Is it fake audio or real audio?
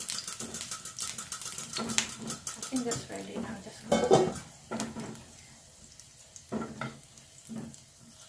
real